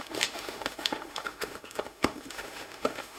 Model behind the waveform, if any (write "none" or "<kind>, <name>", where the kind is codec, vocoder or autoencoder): autoencoder, DAC-VAE